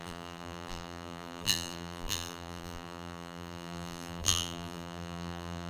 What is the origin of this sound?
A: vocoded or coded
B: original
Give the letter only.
A